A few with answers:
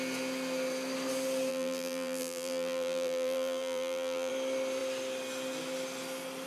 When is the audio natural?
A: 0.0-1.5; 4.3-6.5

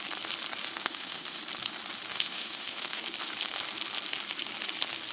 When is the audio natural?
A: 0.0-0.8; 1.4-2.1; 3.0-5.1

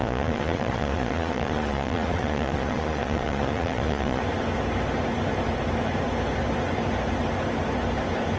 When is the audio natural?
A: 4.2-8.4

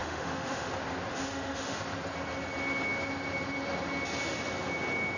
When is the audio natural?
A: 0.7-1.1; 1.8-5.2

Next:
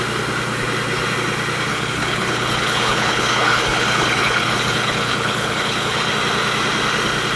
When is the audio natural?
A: 0.0-1.7; 6.1-7.4